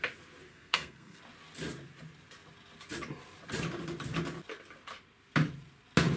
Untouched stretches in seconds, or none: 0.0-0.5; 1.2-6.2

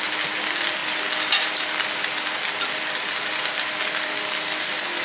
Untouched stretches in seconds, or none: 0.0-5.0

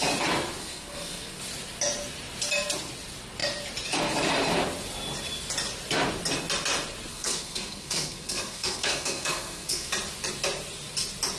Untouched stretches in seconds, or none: 0.0-0.6; 1.4-7.1; 9.9-11.4

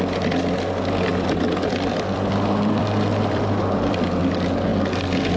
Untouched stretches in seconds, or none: 0.0-1.1; 4.3-5.4